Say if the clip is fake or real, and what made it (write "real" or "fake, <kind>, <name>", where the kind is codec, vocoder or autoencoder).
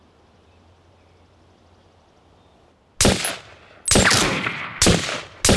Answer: real